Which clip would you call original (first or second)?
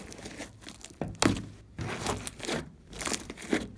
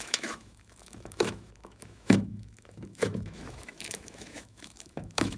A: first